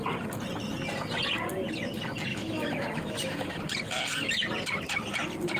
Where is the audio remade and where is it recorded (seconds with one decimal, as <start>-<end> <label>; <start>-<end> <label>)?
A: 0.0-2.3 recorded; 2.3-3.6 remade; 3.6-5.6 recorded